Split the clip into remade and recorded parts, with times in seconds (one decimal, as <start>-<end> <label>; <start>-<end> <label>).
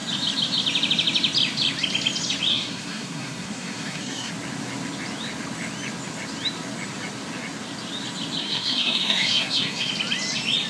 0.0-2.5 recorded; 2.5-4.3 remade; 4.3-8.4 recorded; 8.4-9.9 remade; 9.9-10.7 recorded